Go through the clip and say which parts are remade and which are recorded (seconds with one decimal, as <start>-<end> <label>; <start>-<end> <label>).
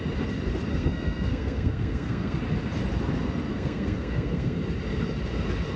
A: 0.0-0.7 recorded; 0.7-2.4 remade; 2.4-3.5 recorded; 3.5-4.6 remade; 4.6-5.8 recorded